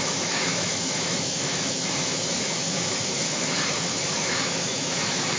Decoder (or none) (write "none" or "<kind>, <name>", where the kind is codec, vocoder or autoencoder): autoencoder, DAC-VAE